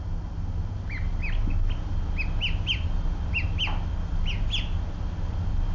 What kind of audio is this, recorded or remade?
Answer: recorded